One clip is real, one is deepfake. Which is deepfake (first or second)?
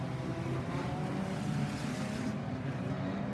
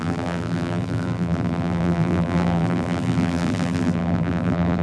second